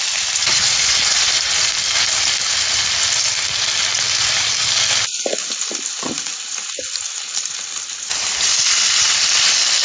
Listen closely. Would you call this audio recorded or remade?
recorded